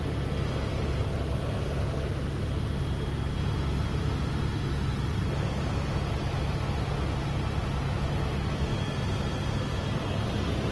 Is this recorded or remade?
recorded